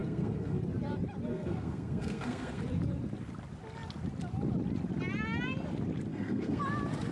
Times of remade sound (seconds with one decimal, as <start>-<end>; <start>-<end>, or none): 0.0-0.6; 1.3-2.6; 6.1-6.6